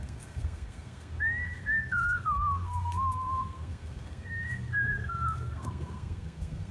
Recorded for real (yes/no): no